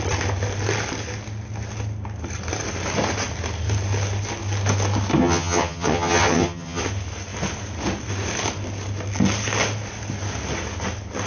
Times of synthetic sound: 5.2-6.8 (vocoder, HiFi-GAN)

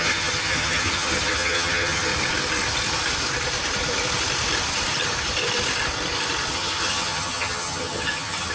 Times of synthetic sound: 0.0-2.1 (vocoder, HiFi-GAN); 6.5-8.5

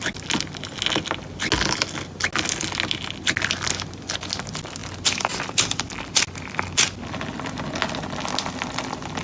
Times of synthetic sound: none

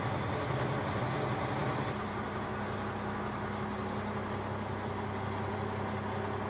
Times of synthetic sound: none

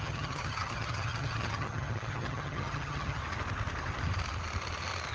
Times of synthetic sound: 0.0-3.2 (vocoder, HiFi-GAN)

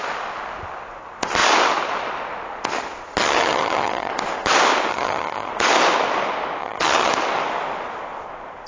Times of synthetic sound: 3.2-4.1 (vocoder, HiFi-GAN); 4.9-5.5; 6.6-7.1

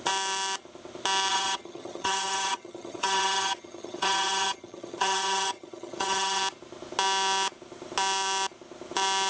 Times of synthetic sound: 1.3-6.4 (vocoder, HiFi-GAN)